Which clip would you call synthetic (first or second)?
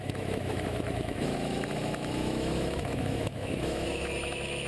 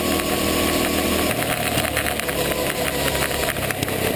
first